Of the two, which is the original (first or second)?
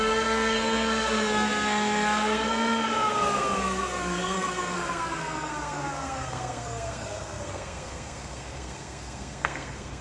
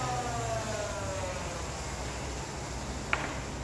second